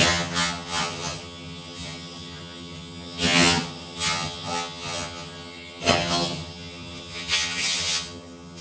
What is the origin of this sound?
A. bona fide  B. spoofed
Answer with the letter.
B